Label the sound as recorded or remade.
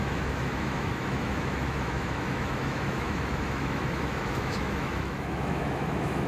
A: remade